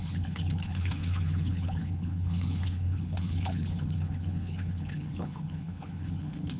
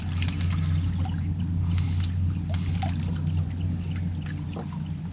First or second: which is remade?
first